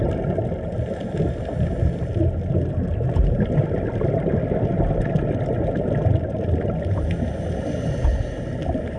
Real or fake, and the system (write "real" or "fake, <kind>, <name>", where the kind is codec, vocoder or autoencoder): real